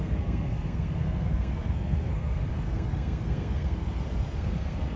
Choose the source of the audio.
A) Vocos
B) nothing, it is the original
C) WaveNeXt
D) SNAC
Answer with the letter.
D